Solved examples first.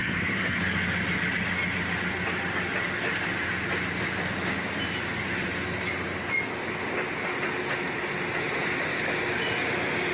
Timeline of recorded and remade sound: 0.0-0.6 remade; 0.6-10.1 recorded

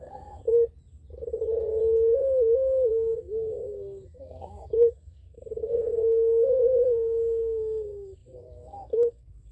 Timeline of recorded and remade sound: 0.0-0.4 remade; 0.4-2.9 recorded; 2.9-9.5 remade

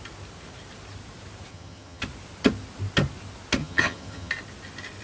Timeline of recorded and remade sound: 0.0-1.5 recorded; 1.5-2.0 remade; 2.0-3.6 recorded; 3.6-4.3 remade; 4.3-5.0 recorded

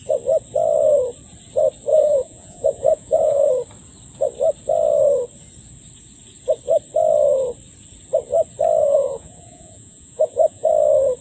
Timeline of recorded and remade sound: 0.0-1.9 recorded; 1.9-3.5 remade; 3.5-8.8 recorded; 8.8-10.7 remade; 10.7-11.2 recorded

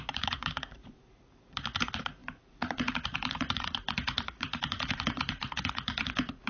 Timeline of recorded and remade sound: 0.0-6.5 remade